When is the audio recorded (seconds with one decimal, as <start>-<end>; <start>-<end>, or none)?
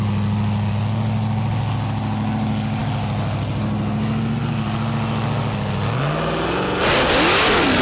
0.0-7.8